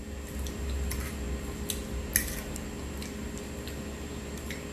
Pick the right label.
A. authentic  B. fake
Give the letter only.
A